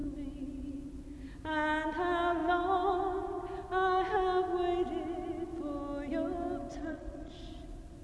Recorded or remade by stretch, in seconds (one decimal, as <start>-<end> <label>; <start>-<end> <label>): 0.0-6.7 recorded; 6.7-7.4 remade; 7.4-8.0 recorded